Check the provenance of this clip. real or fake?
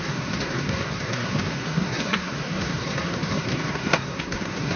fake